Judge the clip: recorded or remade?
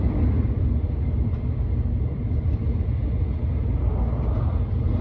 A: recorded